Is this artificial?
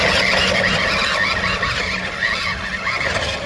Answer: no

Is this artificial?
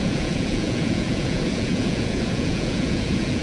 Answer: yes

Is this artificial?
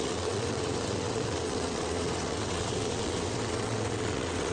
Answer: yes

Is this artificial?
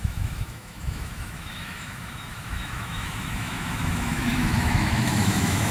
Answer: yes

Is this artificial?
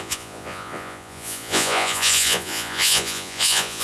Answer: yes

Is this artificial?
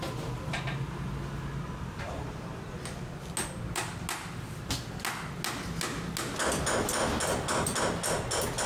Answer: no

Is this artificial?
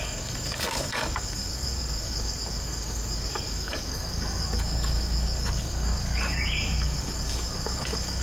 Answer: yes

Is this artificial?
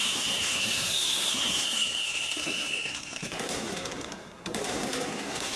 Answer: yes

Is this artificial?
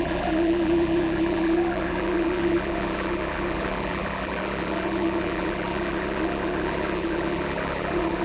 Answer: yes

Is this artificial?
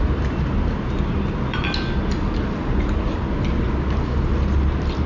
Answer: no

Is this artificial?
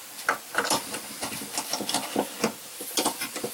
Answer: yes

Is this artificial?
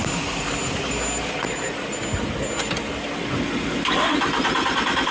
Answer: no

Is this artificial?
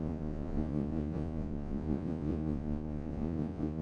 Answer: yes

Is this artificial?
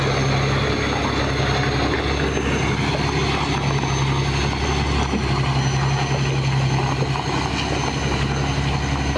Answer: no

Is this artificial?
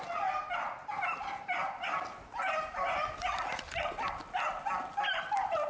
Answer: no